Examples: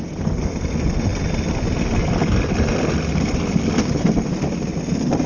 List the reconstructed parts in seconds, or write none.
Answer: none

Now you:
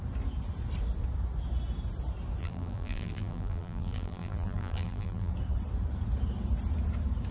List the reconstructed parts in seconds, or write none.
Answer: 2.4-5.3 (vocoder, BigVGAN v2)